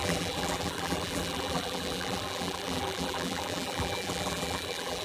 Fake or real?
fake